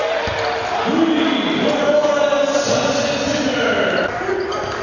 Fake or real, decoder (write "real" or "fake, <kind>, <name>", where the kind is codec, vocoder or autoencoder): real